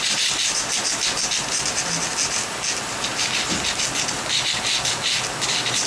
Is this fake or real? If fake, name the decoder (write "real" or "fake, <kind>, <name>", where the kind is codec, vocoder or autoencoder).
real